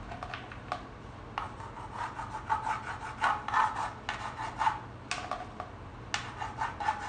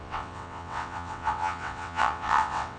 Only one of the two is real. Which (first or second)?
first